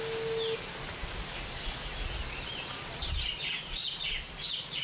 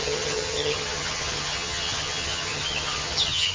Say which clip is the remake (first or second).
second